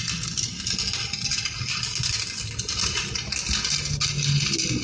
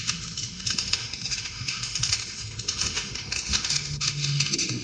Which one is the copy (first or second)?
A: second